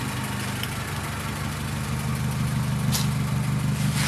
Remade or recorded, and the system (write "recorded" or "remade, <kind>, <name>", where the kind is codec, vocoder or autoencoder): recorded